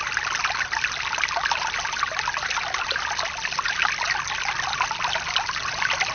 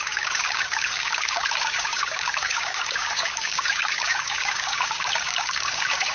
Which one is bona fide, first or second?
first